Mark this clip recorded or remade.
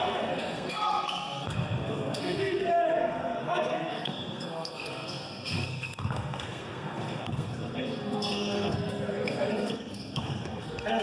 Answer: remade